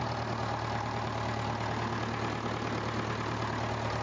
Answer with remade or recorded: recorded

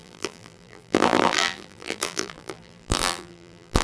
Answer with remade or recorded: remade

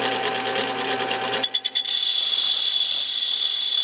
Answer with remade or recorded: recorded